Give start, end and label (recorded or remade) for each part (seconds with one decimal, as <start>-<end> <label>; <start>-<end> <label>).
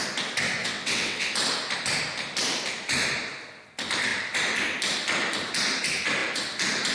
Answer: 0.0-0.6 recorded; 0.6-1.3 remade; 1.3-6.9 recorded